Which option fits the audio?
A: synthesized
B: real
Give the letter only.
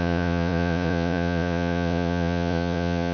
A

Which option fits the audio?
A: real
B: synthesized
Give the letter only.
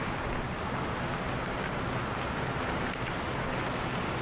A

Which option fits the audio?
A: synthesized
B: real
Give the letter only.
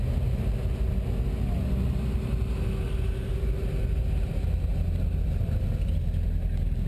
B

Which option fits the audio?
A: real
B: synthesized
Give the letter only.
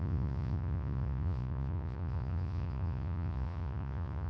B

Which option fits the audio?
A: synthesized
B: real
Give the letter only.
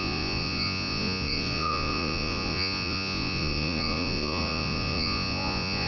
A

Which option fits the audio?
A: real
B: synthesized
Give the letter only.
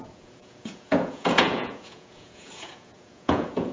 B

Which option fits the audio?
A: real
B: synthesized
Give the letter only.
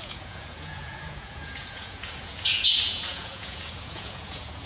B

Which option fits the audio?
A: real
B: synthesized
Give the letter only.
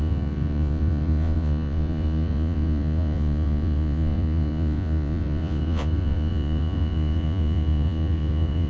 B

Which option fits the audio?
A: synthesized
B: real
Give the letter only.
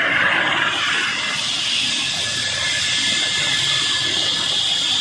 B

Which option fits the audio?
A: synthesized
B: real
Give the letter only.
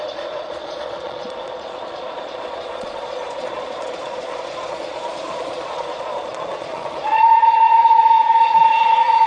A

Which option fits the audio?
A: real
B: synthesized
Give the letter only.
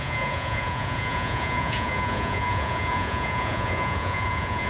B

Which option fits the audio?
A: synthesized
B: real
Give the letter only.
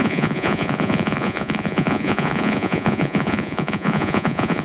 A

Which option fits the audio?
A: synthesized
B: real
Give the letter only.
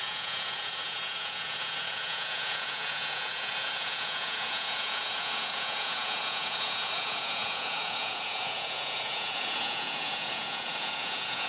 A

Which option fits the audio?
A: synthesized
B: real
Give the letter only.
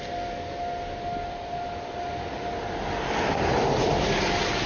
B